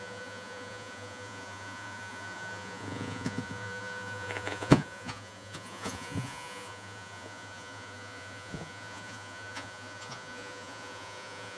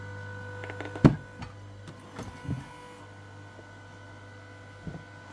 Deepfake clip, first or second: first